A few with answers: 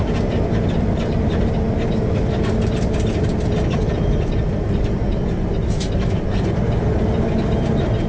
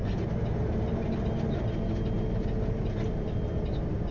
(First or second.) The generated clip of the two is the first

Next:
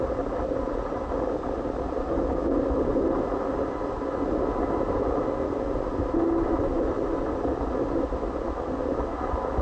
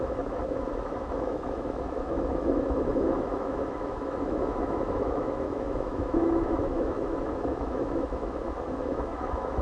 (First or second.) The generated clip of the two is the second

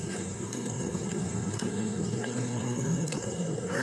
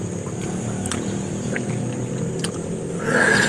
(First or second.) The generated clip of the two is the first